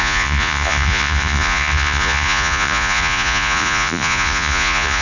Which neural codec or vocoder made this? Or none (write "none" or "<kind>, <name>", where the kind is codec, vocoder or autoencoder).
vocoder, Vocos